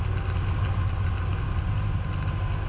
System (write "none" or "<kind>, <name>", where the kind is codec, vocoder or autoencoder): none